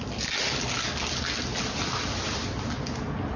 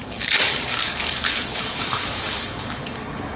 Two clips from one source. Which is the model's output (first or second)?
second